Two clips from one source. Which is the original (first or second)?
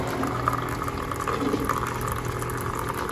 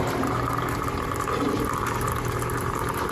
first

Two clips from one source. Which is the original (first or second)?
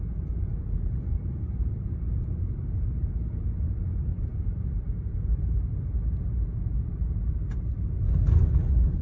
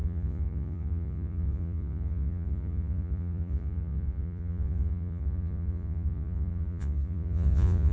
first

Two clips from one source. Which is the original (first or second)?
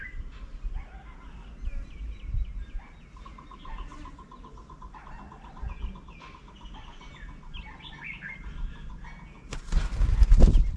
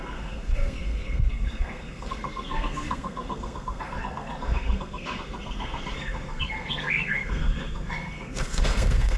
first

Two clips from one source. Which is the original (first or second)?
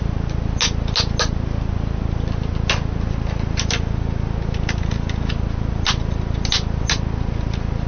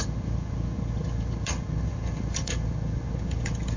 first